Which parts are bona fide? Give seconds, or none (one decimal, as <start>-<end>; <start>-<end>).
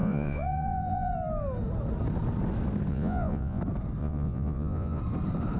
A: 1.1-2.9; 3.6-4.0; 5.0-5.6